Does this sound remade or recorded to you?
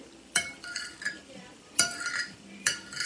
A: remade